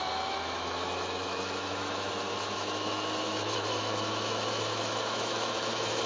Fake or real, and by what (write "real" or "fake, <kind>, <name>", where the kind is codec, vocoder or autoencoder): fake, autoencoder, DAC-VAE